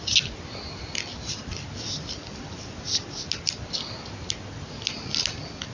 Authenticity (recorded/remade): recorded